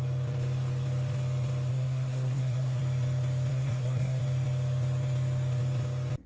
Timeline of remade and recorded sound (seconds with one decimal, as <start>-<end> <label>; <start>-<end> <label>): 0.0-1.7 recorded; 1.7-2.8 remade; 2.8-3.5 recorded; 3.5-4.2 remade; 4.2-6.3 recorded